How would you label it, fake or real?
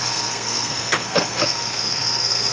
fake